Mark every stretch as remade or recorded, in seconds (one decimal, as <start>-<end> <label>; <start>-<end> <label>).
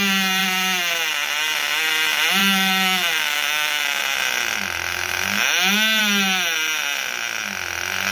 0.0-2.4 recorded; 2.4-4.0 remade; 4.0-4.9 recorded; 4.9-6.0 remade; 6.0-8.1 recorded